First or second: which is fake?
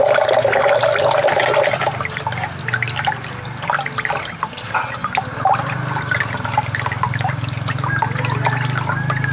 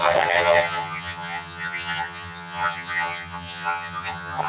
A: second